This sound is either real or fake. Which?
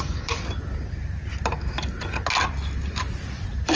real